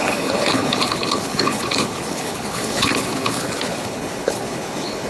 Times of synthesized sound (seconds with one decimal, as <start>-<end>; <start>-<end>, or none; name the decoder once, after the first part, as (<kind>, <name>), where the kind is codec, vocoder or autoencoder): 0.0-5.1 (codec, HILCodec)